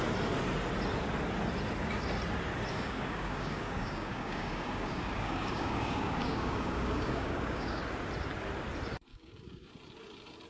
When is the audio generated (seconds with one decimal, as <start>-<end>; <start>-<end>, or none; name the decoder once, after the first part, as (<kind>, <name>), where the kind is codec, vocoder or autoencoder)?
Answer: 2.7-7.8 (codec, DAC); 9.1-9.7